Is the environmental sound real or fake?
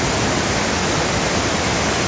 real